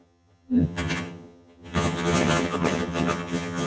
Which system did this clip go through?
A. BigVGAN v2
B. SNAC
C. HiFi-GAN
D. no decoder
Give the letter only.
C